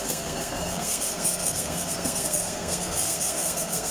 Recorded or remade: remade